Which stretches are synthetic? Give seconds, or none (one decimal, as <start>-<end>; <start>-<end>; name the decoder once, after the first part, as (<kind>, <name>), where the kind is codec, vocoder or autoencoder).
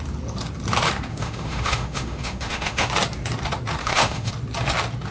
1.1-2.9 (autoencoder, DAC-VAE); 3.8-4.3